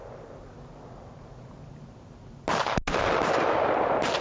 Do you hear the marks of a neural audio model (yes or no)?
no